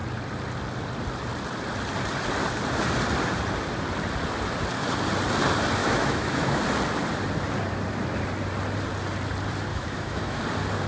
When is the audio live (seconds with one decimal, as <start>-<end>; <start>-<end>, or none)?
0.0-5.8; 6.6-9.7; 10.4-10.9

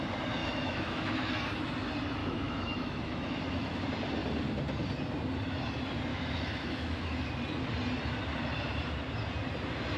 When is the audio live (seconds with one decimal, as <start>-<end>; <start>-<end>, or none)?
0.0-0.4; 1.3-2.2; 3.8-6.1; 7.3-10.0

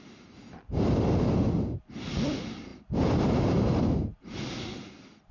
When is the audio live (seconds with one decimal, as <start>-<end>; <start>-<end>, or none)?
0.0-5.3

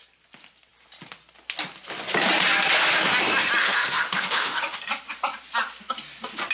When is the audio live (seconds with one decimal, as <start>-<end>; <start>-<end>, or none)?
0.0-3.6; 4.8-6.5

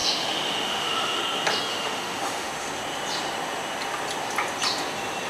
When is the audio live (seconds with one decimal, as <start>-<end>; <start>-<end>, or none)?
1.2-1.7; 2.5-5.3

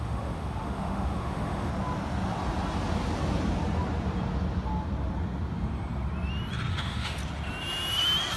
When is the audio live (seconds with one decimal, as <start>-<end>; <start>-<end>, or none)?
1.7-6.7; 7.2-8.4

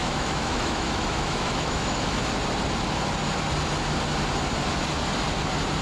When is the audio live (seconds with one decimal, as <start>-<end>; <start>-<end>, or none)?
2.2-5.8

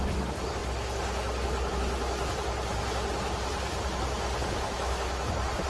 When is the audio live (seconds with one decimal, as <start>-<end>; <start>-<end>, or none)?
0.0-4.4; 5.3-5.7